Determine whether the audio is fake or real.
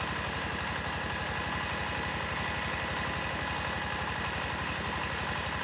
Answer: real